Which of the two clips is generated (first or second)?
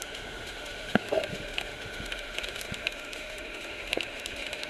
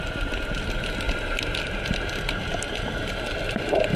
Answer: first